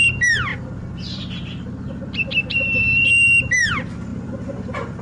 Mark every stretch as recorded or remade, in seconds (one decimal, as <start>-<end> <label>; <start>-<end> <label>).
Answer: 0.0-0.5 recorded; 0.5-3.5 remade; 3.5-4.1 recorded; 4.1-5.0 remade